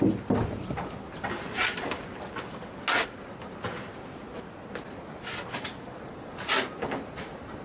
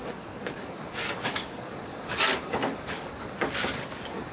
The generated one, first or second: second